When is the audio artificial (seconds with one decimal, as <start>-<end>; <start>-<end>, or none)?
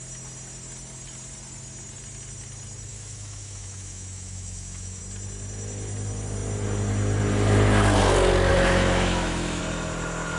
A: 2.9-5.0; 8.5-9.6